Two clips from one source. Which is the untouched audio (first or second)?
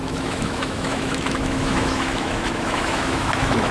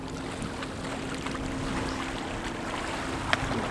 second